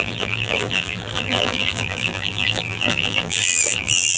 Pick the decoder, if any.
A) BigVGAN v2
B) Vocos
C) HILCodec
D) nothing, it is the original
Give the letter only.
A